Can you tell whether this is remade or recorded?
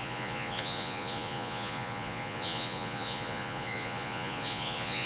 remade